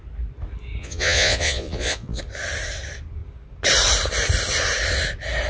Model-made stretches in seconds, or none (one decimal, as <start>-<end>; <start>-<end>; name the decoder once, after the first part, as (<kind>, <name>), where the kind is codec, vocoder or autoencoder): 0.8-2.2 (vocoder, Vocos)